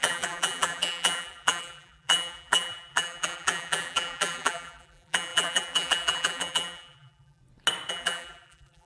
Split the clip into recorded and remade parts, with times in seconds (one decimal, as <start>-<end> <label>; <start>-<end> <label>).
0.0-7.4 remade; 7.4-7.9 recorded; 7.9-8.9 remade

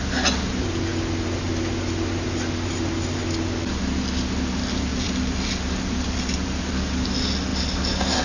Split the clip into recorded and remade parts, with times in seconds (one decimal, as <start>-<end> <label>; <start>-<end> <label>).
0.0-4.9 recorded; 4.9-7.1 remade; 7.1-8.2 recorded

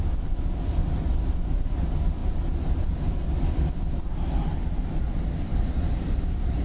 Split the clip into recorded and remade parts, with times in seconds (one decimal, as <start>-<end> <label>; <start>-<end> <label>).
0.0-5.5 recorded; 5.5-6.6 remade